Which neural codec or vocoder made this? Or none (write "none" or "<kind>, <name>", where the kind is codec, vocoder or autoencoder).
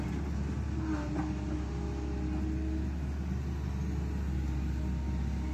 none